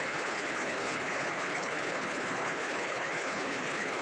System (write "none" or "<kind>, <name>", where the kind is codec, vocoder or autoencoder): codec, HILCodec